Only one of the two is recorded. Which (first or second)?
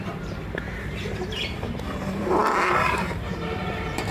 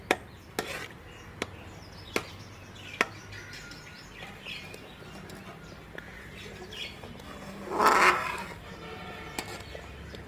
second